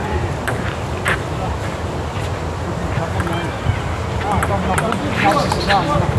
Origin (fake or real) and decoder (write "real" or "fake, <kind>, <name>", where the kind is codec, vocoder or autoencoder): real